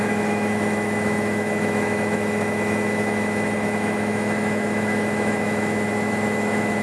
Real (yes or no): no